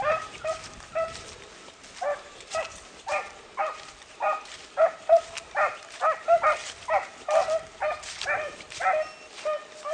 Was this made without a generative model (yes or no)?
yes